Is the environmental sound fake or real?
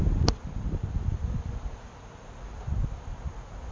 real